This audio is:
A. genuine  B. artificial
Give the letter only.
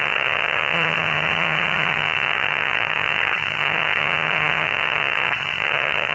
B